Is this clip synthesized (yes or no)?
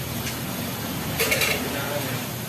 no